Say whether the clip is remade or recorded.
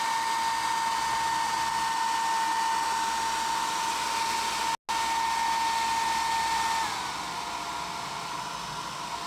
recorded